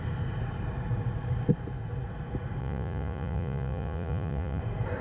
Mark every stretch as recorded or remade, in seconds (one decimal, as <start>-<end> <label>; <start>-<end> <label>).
0.0-2.6 recorded; 2.6-4.6 remade; 4.6-5.0 recorded